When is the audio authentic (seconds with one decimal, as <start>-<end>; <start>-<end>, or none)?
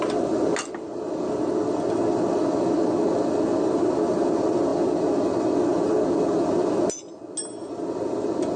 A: 0.0-8.6